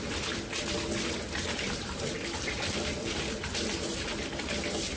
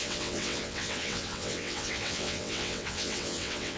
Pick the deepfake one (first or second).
second